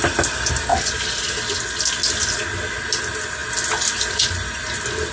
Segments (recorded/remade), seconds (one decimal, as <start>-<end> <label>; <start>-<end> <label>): 0.0-5.1 recorded